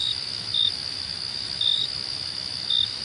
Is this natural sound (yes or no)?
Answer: no